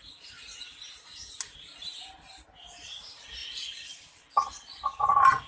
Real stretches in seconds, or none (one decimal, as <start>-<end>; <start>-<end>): 0.0-5.5